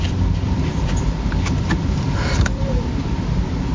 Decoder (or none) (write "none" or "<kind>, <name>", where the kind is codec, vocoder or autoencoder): vocoder, BigVGAN v2